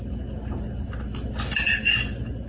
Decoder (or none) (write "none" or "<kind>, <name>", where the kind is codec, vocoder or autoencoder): none